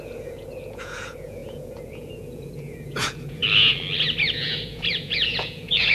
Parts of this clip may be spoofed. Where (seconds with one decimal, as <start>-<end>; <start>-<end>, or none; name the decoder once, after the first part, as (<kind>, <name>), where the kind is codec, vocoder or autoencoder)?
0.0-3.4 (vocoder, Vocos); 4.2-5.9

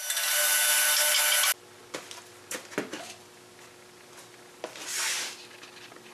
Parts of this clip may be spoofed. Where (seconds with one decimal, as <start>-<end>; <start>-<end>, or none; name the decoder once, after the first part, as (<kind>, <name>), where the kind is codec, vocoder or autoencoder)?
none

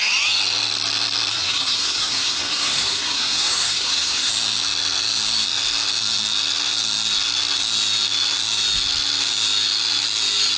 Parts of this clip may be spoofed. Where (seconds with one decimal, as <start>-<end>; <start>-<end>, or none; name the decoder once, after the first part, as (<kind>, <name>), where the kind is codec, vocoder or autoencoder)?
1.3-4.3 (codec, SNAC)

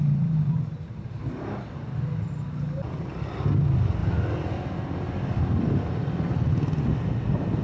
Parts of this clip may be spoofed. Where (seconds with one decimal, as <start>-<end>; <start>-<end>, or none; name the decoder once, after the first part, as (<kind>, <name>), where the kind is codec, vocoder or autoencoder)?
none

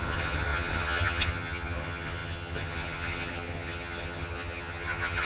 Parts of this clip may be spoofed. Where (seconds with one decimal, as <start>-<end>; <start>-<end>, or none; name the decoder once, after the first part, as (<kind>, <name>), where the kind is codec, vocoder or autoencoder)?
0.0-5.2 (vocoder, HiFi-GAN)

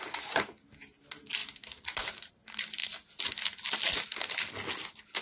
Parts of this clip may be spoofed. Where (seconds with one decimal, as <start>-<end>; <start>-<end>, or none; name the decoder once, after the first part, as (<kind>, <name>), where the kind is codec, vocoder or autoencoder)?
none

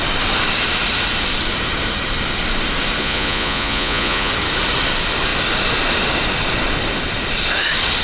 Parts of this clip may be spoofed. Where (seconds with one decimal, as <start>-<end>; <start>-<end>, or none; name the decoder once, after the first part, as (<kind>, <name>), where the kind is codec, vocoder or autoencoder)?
3.0-4.3 (vocoder, Vocos)

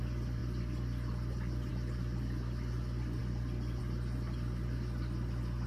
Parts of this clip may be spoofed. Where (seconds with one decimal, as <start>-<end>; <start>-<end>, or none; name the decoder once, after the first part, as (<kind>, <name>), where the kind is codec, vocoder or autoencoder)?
none